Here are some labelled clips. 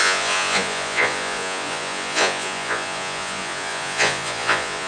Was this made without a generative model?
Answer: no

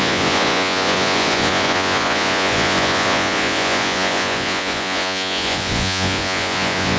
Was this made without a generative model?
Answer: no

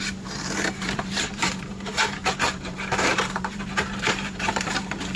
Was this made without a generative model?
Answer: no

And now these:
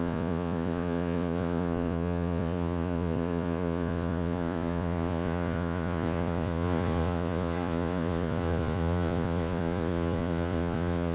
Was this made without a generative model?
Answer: no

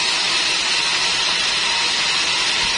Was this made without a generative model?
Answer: yes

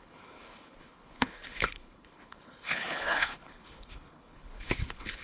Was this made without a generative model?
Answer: no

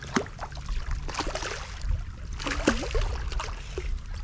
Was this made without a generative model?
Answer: yes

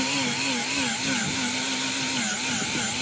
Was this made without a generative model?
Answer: yes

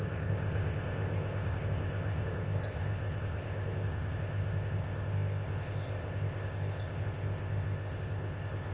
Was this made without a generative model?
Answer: no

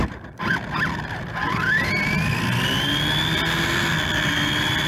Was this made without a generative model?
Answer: yes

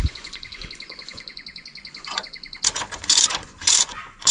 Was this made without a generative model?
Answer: no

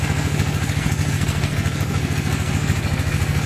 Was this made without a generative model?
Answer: no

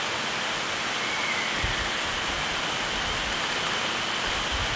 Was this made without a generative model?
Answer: yes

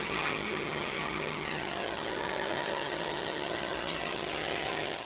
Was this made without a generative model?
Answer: no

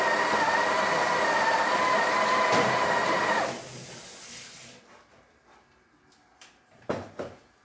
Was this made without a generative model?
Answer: yes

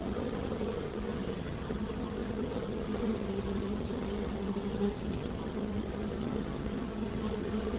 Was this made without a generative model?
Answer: no